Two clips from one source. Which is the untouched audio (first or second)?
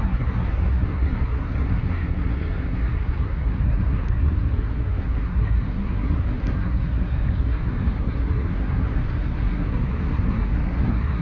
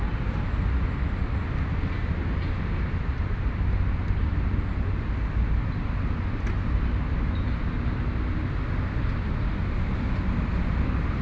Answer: second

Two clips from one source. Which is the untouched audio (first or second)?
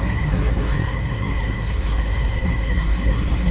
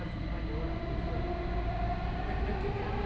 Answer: second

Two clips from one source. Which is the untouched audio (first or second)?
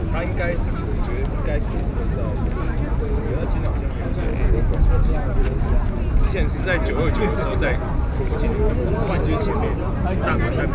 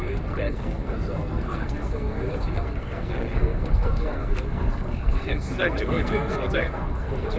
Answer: first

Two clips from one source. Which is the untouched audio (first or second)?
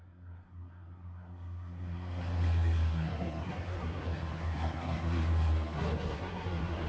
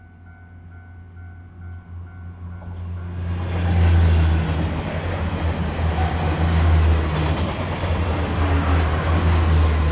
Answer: second